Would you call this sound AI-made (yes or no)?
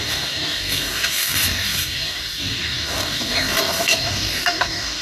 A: yes